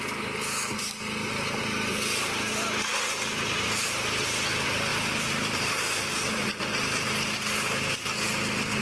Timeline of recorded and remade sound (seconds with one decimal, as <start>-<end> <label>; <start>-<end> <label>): 0.0-4.9 recorded; 4.9-6.5 remade; 6.5-8.8 recorded